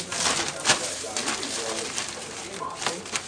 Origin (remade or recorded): recorded